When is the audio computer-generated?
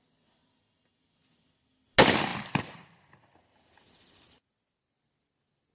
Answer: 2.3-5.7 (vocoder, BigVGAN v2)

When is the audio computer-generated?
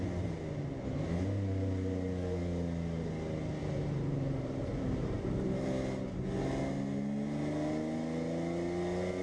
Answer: 3.6-5.7 (vocoder, BigVGAN v2)